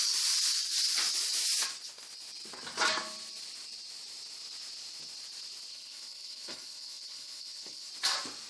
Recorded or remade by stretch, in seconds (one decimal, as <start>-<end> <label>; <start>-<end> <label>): 0.0-5.7 recorded; 5.7-7.9 remade; 7.9-8.5 recorded